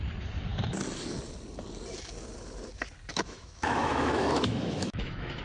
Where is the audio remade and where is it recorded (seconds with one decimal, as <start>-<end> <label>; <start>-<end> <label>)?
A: 0.0-3.1 recorded; 3.1-5.4 remade